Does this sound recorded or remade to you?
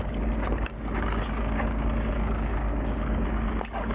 remade